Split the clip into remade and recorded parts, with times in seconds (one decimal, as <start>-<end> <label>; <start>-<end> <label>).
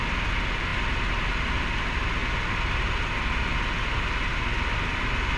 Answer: 0.0-0.7 recorded; 0.7-1.3 remade; 1.3-5.4 recorded